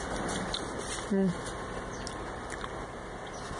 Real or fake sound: real